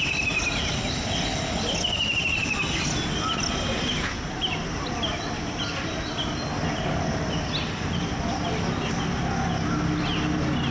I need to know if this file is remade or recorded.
recorded